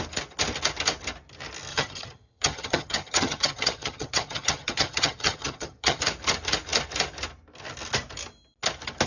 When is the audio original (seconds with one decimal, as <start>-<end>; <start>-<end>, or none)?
0.0-1.7; 6.0-9.1